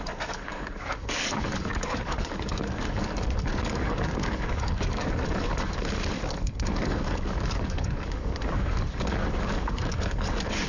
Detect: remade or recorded remade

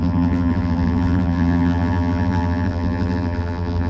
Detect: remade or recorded remade